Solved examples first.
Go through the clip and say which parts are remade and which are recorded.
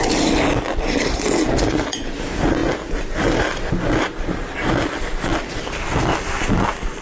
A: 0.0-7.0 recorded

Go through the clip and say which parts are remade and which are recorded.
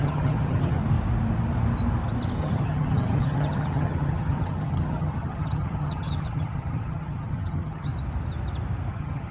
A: 0.0-0.8 remade; 0.8-2.4 recorded; 2.4-7.9 remade; 7.9-8.9 recorded; 8.9-9.3 remade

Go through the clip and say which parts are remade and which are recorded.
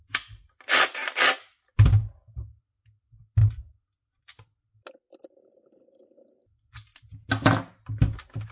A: 0.0-8.5 recorded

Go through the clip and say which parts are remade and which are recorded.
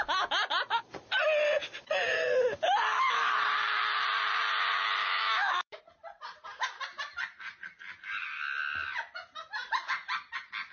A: 0.0-5.0 recorded; 5.0-5.8 remade; 5.8-10.7 recorded